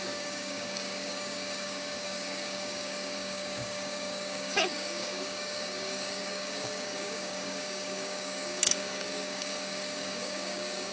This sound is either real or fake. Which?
fake